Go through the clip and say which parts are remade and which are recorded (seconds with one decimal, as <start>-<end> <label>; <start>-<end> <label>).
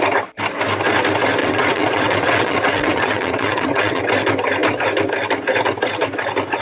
0.0-1.4 recorded; 1.4-4.0 remade; 4.0-6.6 recorded